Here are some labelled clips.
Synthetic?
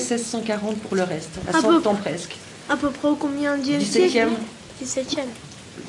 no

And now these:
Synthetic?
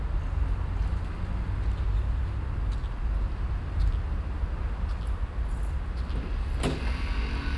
no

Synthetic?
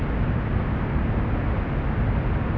no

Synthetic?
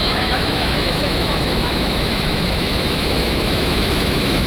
yes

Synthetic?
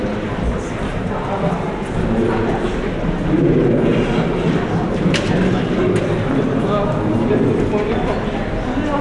no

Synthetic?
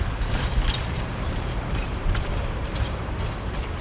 yes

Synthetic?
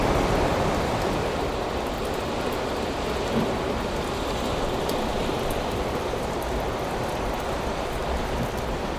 no